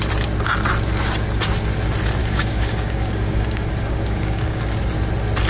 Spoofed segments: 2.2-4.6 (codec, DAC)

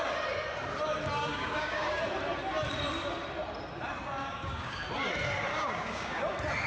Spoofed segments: 1.2-2.0 (codec, DAC); 4.2-4.8; 5.5-6.2

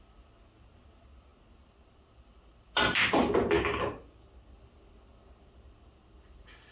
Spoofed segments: none

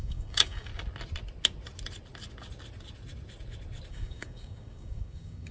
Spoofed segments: 0.0-0.7 (codec, DAC); 3.9-5.5

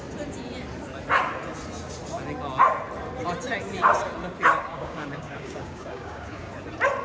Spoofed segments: 4.7-6.5 (codec, DAC)